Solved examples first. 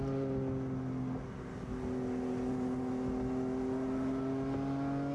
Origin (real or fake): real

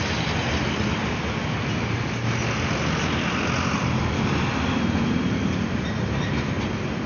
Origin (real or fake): real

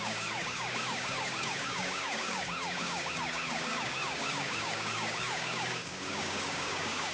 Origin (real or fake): fake